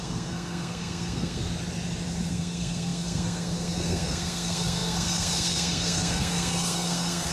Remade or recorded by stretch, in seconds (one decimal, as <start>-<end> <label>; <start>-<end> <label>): 0.0-1.4 remade; 1.4-2.3 recorded; 2.3-7.3 remade